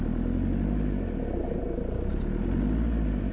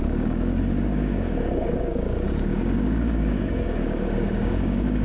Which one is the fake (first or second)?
second